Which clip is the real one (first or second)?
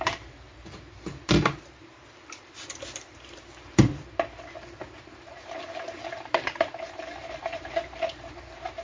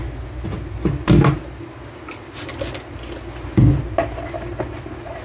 second